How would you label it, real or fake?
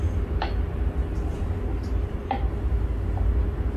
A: real